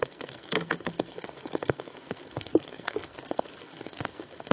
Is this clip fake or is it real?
fake